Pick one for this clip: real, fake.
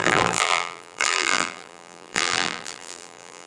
fake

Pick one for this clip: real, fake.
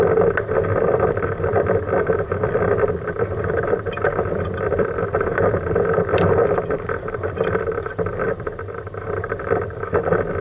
fake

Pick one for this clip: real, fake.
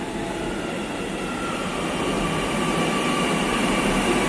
real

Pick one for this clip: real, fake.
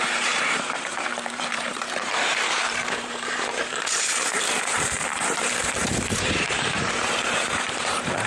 fake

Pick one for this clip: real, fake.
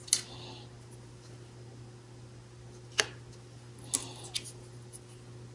real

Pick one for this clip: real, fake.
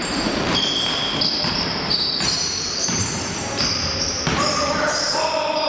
fake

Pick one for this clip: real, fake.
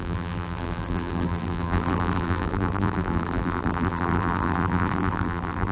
fake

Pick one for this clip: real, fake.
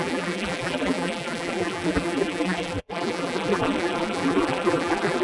fake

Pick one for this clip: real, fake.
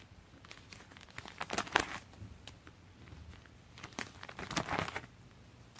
real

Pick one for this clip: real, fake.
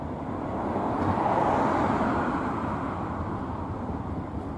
fake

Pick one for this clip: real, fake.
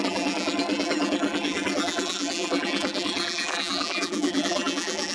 fake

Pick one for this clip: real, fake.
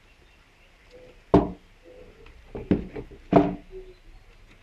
real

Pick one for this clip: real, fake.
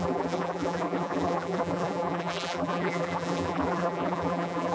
fake